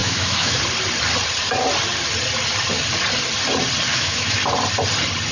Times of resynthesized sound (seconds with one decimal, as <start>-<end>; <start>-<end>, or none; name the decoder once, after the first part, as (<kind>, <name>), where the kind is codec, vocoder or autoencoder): 0.0-0.6 (autoencoder, DAC-VAE); 3.9-4.4